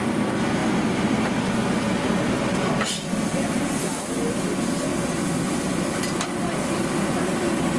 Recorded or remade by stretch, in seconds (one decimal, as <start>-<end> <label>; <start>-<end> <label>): 0.0-7.8 recorded